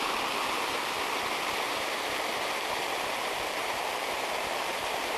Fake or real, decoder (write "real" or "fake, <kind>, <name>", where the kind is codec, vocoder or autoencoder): fake, vocoder, BigVGAN v2